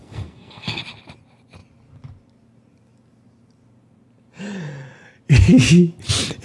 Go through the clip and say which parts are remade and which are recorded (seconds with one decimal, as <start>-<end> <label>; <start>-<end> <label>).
0.0-0.8 remade; 0.8-6.4 recorded